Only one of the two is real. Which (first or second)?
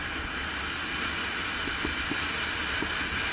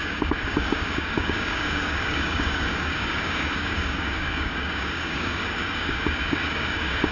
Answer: first